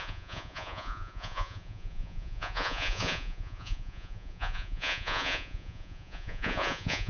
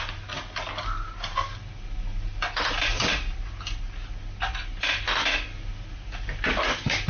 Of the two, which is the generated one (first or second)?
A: first